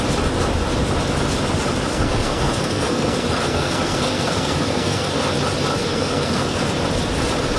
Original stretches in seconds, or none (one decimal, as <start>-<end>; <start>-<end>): 0.0-1.9; 5.3-5.8; 6.6-7.6